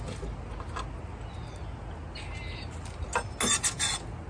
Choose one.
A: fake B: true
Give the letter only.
B